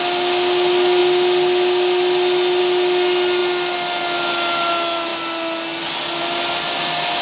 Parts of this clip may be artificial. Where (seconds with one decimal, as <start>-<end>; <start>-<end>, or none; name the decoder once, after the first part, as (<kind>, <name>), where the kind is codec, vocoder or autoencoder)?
none